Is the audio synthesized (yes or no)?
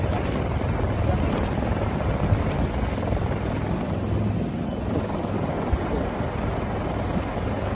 no